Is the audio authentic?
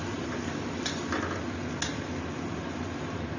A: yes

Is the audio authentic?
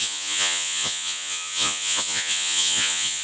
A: no